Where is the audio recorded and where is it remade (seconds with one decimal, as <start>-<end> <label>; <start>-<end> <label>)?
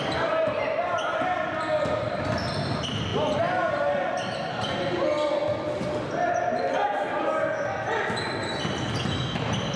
0.0-5.4 remade; 5.4-9.8 recorded